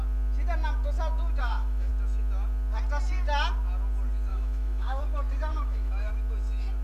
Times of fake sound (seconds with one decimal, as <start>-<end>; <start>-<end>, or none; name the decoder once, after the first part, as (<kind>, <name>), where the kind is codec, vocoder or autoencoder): 1.4-1.9 (autoencoder, DAC-VAE); 4.3-5.0; 5.5-6.1